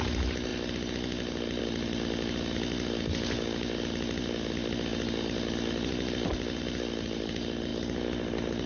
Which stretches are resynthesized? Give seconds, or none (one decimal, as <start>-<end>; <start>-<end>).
none